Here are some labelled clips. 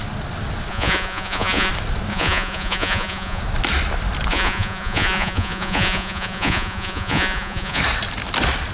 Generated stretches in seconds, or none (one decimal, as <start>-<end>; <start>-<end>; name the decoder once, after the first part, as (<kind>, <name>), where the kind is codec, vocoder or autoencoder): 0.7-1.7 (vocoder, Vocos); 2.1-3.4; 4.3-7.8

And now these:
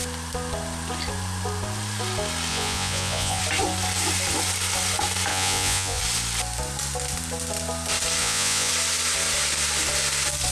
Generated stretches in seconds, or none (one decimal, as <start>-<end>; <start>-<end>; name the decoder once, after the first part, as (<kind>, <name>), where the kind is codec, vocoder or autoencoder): 2.5-3.4 (vocoder, Vocos); 5.3-6.0; 8.2-8.7

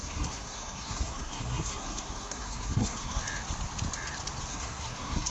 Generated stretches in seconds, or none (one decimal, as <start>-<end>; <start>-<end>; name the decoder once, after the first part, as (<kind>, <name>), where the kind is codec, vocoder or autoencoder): 0.0-3.2 (codec, SNAC); 4.5-5.3

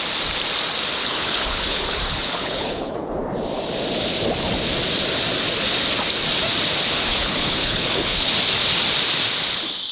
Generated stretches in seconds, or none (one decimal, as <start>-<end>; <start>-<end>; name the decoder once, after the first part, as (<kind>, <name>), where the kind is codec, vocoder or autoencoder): 1.0-3.1 (codec, HILCodec); 7.1-8.3

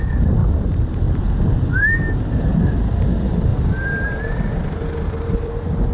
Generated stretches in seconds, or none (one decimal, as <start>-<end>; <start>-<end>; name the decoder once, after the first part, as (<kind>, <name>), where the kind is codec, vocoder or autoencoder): 0.4-1.2 (vocoder, BigVGAN v2); 3.5-5.5

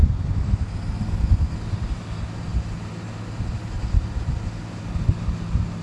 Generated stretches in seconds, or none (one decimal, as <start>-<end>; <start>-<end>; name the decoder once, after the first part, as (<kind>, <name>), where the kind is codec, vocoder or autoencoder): none